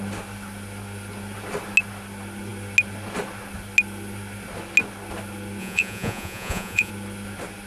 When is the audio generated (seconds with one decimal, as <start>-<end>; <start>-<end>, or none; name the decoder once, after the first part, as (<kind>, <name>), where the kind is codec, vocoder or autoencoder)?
5.6-6.9 (vocoder, Vocos)